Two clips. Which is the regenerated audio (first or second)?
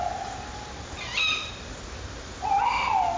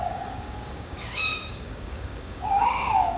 second